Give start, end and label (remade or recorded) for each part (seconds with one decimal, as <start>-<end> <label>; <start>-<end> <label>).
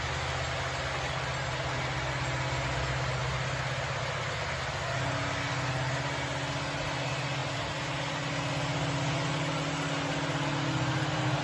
0.0-11.4 recorded